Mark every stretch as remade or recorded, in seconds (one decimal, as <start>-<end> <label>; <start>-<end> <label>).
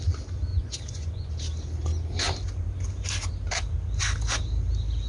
0.0-0.5 recorded; 0.5-1.3 remade; 1.3-5.1 recorded